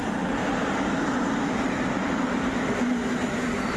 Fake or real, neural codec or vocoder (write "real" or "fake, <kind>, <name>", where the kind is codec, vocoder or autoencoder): real